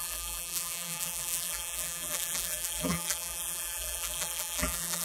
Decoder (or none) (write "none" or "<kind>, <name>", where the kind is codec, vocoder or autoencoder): vocoder, BigVGAN v2